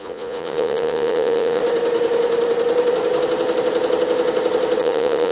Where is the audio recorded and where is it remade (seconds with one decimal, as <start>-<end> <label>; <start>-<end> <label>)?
0.0-1.6 remade; 1.6-4.8 recorded; 4.8-5.3 remade